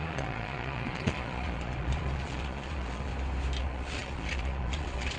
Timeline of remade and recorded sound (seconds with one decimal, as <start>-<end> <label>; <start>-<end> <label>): 0.0-3.1 remade; 3.1-3.6 recorded; 3.6-5.2 remade